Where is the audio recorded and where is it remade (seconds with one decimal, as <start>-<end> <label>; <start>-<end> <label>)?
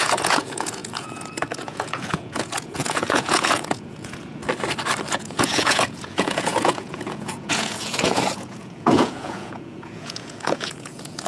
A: 0.0-4.4 remade; 4.4-5.1 recorded; 5.1-11.3 remade